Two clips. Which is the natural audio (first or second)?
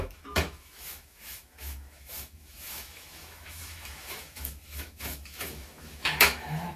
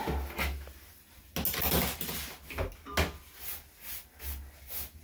second